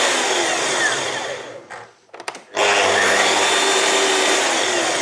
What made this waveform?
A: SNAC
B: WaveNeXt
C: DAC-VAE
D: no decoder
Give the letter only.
D